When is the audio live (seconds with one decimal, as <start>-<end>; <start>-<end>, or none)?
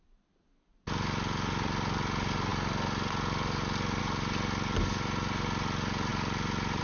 0.0-6.8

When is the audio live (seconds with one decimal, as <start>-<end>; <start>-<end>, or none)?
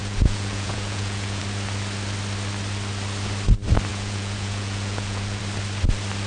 1.4-3.9; 5.4-6.3